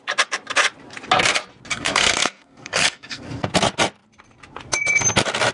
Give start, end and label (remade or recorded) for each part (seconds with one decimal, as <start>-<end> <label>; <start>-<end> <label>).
0.0-1.7 recorded; 1.7-3.5 remade; 3.5-5.5 recorded

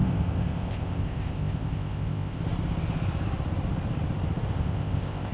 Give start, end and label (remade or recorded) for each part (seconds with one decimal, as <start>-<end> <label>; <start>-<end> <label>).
0.0-2.4 remade; 2.4-4.5 recorded; 4.5-5.3 remade